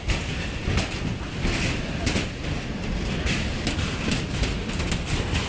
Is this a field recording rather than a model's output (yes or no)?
yes